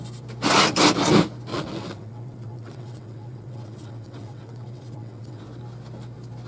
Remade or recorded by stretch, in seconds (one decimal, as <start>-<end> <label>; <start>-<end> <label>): 0.0-1.5 recorded; 1.5-5.4 remade; 5.4-6.5 recorded